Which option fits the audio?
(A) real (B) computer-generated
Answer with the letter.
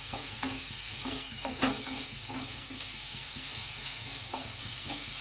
B